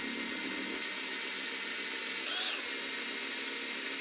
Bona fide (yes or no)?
yes